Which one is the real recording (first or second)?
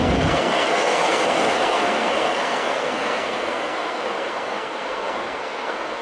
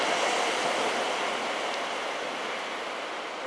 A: second